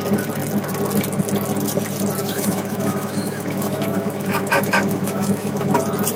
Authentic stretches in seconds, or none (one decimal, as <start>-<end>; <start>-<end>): 0.0-2.2; 5.8-6.2